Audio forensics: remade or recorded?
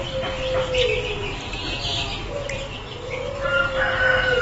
recorded